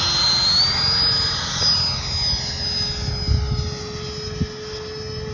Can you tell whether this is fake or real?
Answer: real